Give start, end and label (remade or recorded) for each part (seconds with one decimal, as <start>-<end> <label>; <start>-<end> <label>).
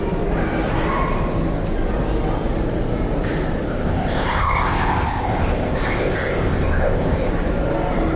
0.0-3.7 recorded; 3.7-7.3 remade; 7.3-8.2 recorded